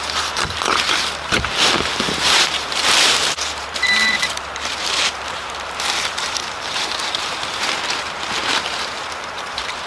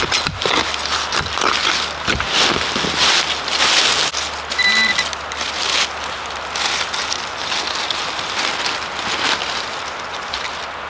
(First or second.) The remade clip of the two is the first